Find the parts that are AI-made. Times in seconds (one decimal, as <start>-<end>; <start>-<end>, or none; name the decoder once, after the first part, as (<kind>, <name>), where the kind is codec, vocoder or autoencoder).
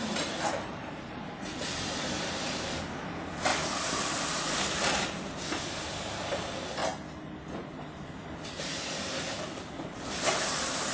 0.0-6.8 (vocoder, BigVGAN v2); 7.8-10.9